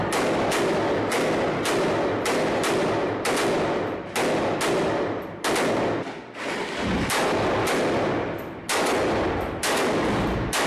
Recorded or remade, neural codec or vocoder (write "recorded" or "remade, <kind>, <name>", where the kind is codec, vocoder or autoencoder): recorded